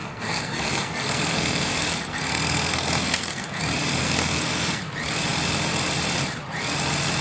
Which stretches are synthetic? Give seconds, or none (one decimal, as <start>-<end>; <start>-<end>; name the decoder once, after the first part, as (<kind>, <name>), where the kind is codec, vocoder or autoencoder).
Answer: 0.0-3.6 (codec, SNAC); 4.0-4.8